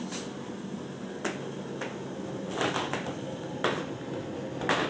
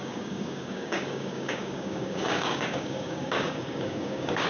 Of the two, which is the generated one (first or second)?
second